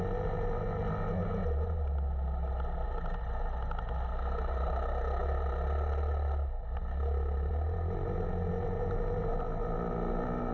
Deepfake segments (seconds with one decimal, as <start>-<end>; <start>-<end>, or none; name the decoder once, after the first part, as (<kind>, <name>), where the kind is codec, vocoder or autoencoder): none